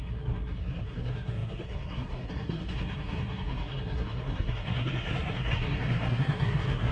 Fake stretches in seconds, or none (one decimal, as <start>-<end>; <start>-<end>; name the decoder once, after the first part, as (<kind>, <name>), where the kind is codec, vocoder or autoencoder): 0.0-6.9 (codec, SNAC)